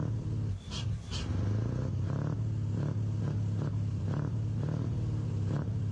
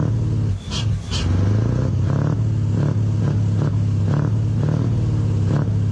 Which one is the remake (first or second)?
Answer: first